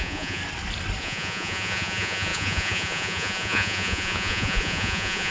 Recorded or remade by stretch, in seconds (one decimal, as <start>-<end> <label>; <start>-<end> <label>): 0.0-0.4 remade; 0.4-1.0 recorded; 1.0-5.3 remade